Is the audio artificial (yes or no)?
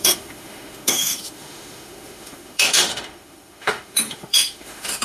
yes